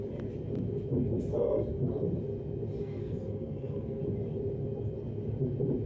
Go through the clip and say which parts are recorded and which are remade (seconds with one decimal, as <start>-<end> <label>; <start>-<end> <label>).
0.0-2.8 recorded; 2.8-4.0 remade; 4.0-5.9 recorded